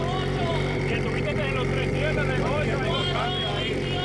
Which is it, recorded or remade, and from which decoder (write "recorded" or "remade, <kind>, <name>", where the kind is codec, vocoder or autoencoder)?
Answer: remade, vocoder, BigVGAN v2